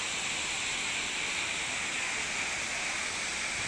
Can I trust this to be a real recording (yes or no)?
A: yes